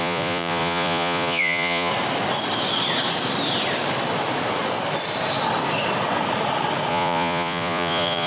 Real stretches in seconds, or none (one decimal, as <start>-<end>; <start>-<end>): 1.9-6.9